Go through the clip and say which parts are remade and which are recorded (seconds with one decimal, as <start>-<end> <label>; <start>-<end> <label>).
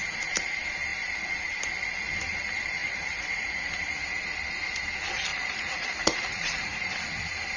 0.0-2.8 recorded; 2.8-3.7 remade; 3.7-5.3 recorded; 5.3-6.9 remade; 6.9-7.6 recorded